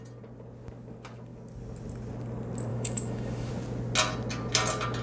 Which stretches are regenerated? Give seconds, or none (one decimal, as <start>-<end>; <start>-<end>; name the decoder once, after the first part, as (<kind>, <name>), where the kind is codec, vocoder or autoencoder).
2.7-3.5 (autoencoder, DAC-VAE)